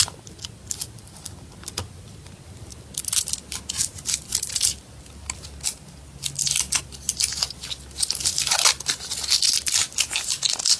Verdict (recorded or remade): recorded